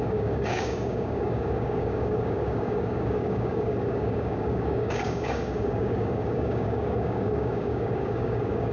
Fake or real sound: fake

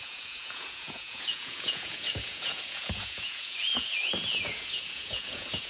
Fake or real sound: fake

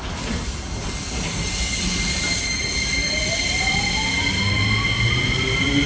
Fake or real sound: real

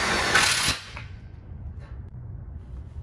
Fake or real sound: fake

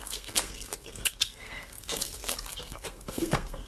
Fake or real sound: fake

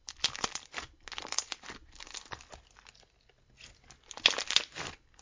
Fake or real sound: real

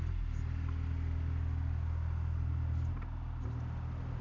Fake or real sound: real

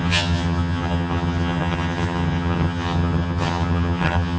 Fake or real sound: fake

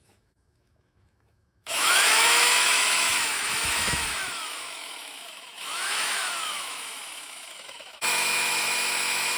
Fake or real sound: fake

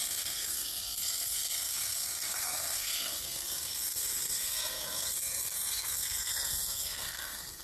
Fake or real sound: fake